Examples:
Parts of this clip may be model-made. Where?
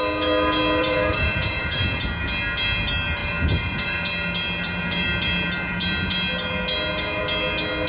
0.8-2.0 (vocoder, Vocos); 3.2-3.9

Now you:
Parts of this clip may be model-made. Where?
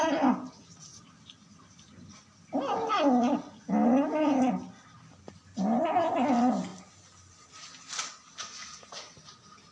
none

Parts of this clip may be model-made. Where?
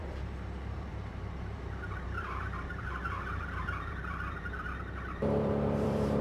0.0-6.2 (vocoder, BigVGAN v2)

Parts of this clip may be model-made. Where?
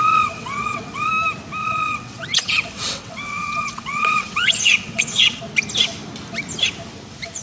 0.0-1.1 (vocoder, WaveNeXt); 1.6-5.4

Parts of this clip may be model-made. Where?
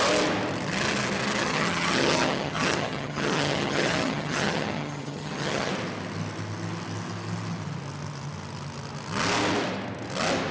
1.4-5.7 (vocoder, HiFi-GAN)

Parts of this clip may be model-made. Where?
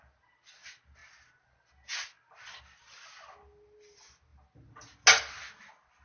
none